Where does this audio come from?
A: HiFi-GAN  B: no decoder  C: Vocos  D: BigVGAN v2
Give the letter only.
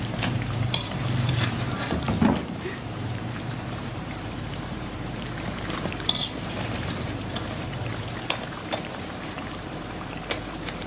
D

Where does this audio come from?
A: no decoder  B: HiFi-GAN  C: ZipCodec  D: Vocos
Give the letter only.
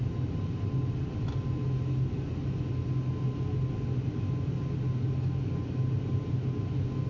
A